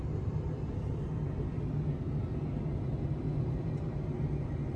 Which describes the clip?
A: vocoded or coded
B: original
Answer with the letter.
B